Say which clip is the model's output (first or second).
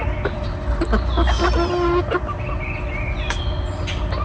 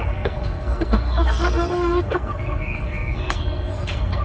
second